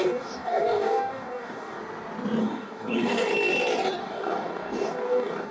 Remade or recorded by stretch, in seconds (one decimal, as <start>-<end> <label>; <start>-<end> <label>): 0.0-1.8 remade; 1.8-2.4 recorded; 2.4-3.3 remade; 3.3-4.0 recorded; 4.0-5.5 remade